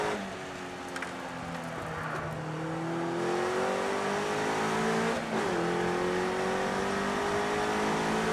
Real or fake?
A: real